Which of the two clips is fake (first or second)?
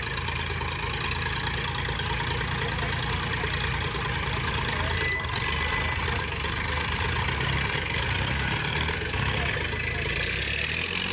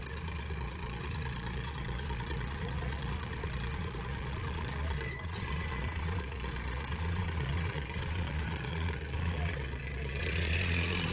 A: second